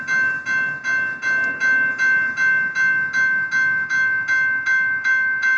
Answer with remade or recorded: recorded